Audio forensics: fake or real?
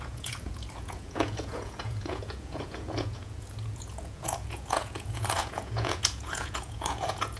fake